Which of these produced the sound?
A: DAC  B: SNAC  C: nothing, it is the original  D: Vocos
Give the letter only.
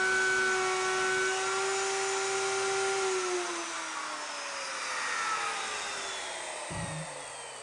C